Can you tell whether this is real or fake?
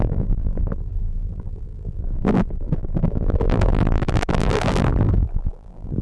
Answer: fake